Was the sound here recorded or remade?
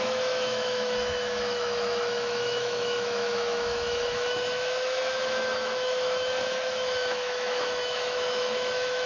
remade